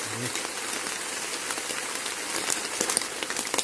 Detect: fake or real real